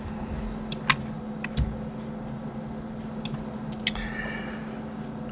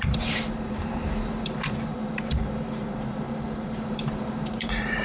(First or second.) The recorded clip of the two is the first